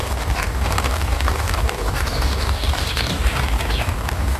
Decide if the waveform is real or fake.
fake